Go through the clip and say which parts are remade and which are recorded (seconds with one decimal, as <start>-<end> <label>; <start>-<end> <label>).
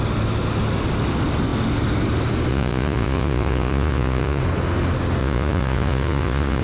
0.0-2.5 recorded; 2.5-4.4 remade; 4.4-5.2 recorded; 5.2-6.6 remade